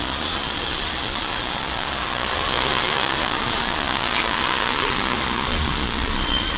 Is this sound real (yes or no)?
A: no